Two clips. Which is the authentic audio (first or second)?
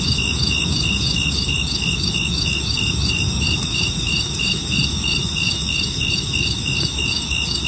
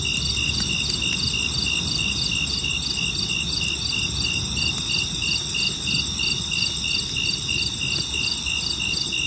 second